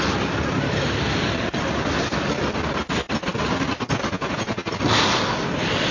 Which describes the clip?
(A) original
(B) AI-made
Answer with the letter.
A